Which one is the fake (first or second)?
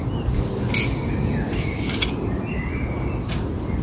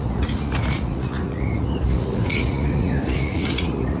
second